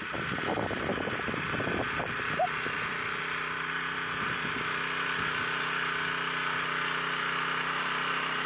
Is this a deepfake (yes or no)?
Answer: no